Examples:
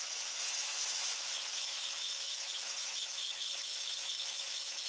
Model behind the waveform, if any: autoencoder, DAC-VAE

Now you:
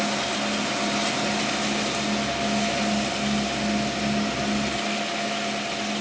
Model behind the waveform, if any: none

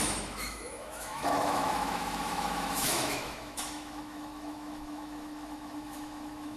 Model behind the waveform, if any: autoencoder, DAC-VAE